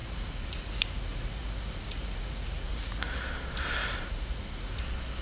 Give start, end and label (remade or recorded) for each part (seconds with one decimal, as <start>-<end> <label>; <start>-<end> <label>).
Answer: 0.0-3.1 remade; 3.1-3.8 recorded; 3.8-4.8 remade; 4.8-5.2 recorded